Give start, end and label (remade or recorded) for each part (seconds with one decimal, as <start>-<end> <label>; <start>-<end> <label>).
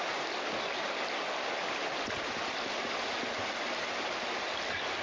0.0-5.0 recorded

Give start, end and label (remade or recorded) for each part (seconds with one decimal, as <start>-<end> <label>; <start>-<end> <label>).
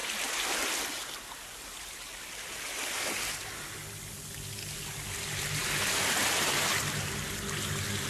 0.0-1.0 recorded; 1.0-4.8 remade; 4.8-8.1 recorded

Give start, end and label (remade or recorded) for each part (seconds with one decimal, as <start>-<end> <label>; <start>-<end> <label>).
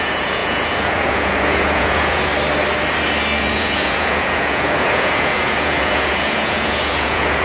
0.0-2.3 remade; 2.3-3.4 recorded; 3.4-7.4 remade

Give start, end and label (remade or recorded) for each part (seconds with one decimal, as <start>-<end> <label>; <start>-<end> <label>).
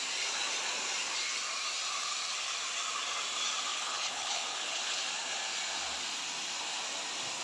0.0-3.7 recorded; 3.7-5.0 remade; 5.0-7.4 recorded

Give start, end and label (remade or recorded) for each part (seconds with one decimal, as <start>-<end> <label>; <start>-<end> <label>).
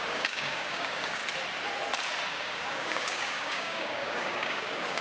0.0-1.2 remade; 1.2-2.3 recorded; 2.3-5.0 remade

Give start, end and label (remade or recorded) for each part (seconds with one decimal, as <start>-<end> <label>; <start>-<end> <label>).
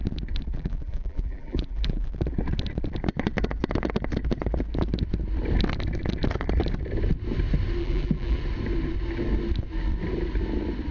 0.0-0.5 recorded; 0.5-2.1 remade; 2.1-7.8 recorded; 7.8-8.4 remade; 8.4-10.9 recorded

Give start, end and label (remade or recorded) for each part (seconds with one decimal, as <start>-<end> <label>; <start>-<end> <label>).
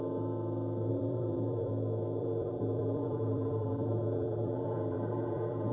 0.0-0.9 recorded; 0.9-1.7 remade; 1.7-2.2 recorded; 2.2-5.7 remade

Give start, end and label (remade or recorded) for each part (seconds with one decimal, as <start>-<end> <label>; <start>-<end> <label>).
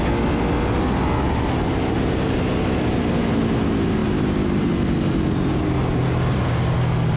0.0-7.2 recorded